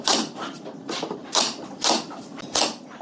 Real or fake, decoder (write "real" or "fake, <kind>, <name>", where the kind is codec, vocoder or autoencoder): fake, vocoder, BigVGAN v2